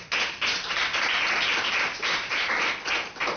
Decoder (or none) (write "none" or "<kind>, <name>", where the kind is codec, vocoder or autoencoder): none